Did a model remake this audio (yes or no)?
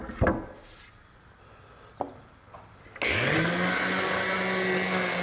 no